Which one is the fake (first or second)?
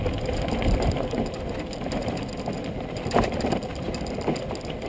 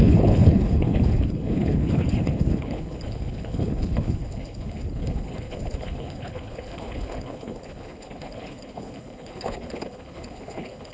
second